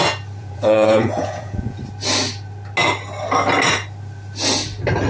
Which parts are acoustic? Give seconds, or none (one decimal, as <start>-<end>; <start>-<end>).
0.0-0.4; 1.8-5.1